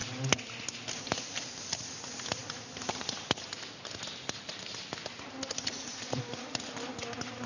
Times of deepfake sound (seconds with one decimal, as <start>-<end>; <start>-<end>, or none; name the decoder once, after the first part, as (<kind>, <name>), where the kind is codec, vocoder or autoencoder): none